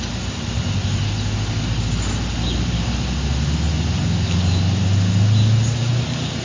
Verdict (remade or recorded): recorded